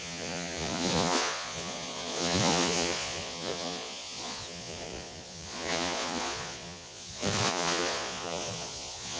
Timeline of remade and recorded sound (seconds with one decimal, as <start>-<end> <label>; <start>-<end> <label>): 0.0-9.2 remade